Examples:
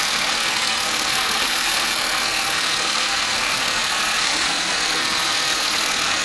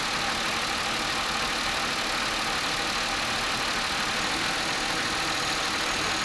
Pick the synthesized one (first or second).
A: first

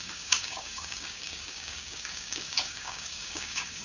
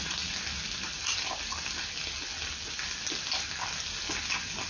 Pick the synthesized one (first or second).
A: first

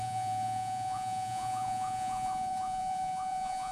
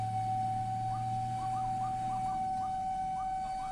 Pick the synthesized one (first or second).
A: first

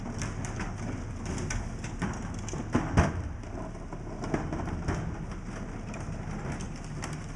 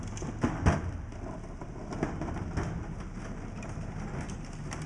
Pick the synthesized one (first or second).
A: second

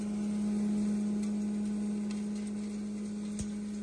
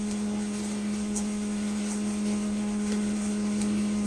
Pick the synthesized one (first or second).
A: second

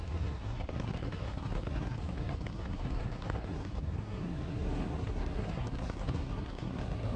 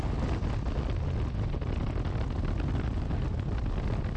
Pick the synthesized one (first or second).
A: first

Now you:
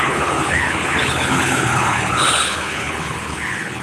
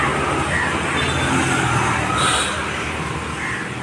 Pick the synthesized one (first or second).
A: first